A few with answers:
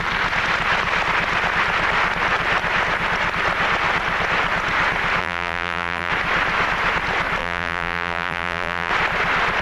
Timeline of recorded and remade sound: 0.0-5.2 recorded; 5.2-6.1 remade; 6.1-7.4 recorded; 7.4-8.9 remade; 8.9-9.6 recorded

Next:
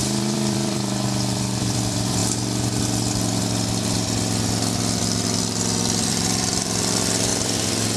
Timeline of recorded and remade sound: 0.0-2.2 remade; 2.2-5.8 recorded; 5.8-8.0 remade

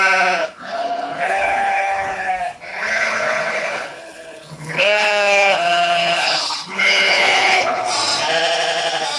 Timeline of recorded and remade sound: 0.0-0.4 recorded; 0.4-2.3 remade; 2.3-2.7 recorded; 2.7-7.9 remade; 7.9-9.2 recorded

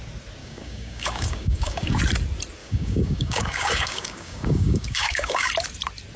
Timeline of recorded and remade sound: 0.0-0.4 recorded; 0.4-2.0 remade; 2.0-2.6 recorded; 2.6-5.5 remade; 5.5-6.2 recorded

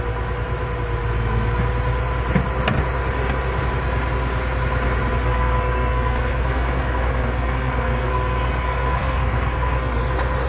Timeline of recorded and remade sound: 0.0-5.2 recorded; 5.2-10.0 remade; 10.0-10.5 recorded

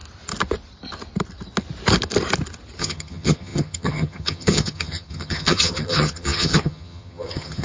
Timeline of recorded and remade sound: 0.0-2.8 recorded; 2.8-7.6 remade

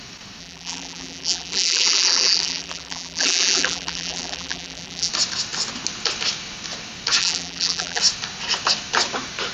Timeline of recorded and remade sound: 0.0-0.4 recorded; 0.4-5.1 remade; 5.1-7.2 recorded; 7.2-8.0 remade; 8.0-9.5 recorded

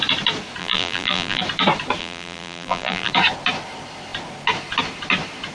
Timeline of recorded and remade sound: 0.0-0.6 recorded; 0.6-1.4 remade; 1.4-2.0 recorded; 2.0-3.1 remade; 3.1-5.5 recorded